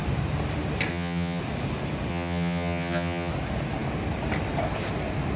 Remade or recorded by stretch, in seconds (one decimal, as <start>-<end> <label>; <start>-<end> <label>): 0.0-0.9 recorded; 0.9-1.4 remade; 1.4-2.1 recorded; 2.1-3.3 remade; 3.3-5.4 recorded

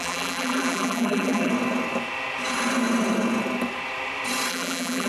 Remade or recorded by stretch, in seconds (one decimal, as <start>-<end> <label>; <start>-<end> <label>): 0.0-1.5 remade; 1.5-4.5 recorded; 4.5-5.1 remade

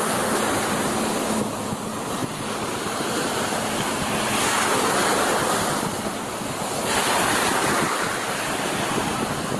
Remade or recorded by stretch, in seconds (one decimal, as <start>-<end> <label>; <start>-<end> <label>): 0.0-9.6 recorded

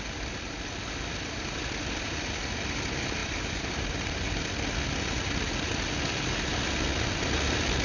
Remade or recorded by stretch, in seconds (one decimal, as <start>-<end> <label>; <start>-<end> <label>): 0.0-3.2 recorded; 3.2-4.4 remade; 4.4-7.8 recorded

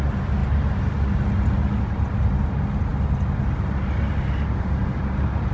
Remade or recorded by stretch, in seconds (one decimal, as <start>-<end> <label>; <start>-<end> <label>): 0.0-5.5 recorded

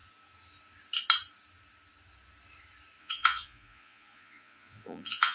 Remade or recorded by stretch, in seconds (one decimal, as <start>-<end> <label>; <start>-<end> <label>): 0.0-3.0 recorded; 3.0-5.3 remade

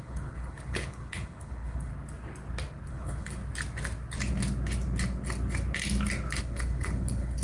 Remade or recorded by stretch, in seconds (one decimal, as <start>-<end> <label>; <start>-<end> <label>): 0.0-1.9 remade; 1.9-2.9 recorded; 2.9-3.4 remade; 3.4-6.4 recorded; 6.4-7.4 remade

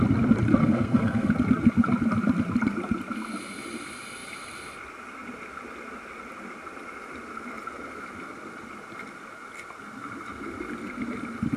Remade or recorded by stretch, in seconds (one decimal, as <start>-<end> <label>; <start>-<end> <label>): 0.0-0.6 recorded; 0.6-1.3 remade; 1.3-11.6 recorded